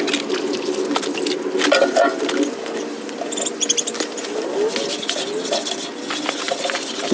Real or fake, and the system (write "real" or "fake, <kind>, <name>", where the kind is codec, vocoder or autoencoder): real